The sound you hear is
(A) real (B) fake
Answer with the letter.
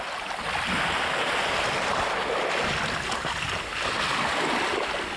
A